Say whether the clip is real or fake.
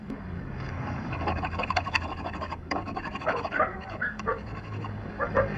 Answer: fake